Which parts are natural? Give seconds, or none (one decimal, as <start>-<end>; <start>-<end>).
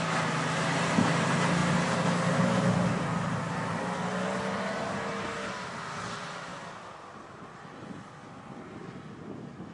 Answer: 0.0-9.7